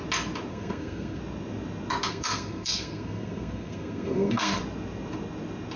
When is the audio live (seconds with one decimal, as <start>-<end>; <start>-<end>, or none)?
0.0-0.5; 1.2-2.1; 4.6-5.8